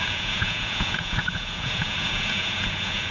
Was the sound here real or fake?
fake